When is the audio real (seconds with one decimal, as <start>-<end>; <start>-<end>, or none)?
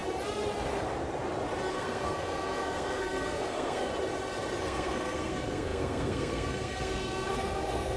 0.0-1.7; 3.9-4.6